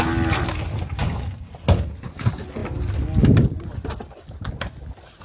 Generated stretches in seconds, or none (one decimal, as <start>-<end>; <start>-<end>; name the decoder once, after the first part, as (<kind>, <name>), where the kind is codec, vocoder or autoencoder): 1.0-1.5 (codec, DAC)